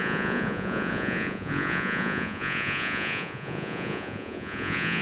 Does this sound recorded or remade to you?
remade